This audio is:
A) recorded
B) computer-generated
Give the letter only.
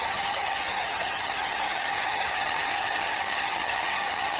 B